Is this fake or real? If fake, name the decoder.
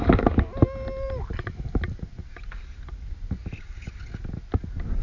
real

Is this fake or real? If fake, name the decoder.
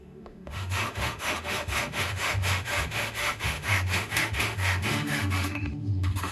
fake, autoencoder, DAC-VAE